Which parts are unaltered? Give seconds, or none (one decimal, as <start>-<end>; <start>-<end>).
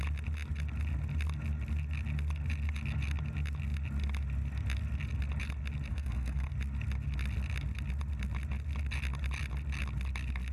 0.0-5.9; 6.5-10.5